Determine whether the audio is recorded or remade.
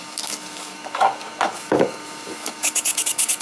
remade